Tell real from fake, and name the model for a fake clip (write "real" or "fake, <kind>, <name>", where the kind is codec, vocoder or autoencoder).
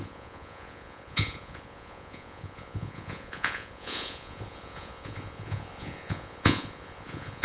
fake, vocoder, Vocos